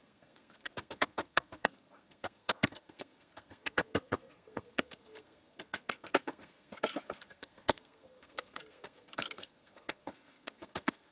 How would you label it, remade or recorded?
remade